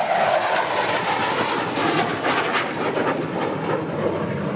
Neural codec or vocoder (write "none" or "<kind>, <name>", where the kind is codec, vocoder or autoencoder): none